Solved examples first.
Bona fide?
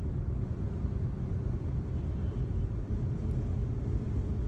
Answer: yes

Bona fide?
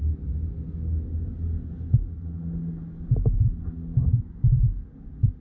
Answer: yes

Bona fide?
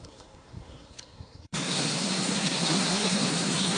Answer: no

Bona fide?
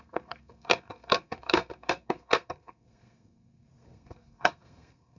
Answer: no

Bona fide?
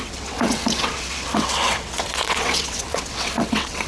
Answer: no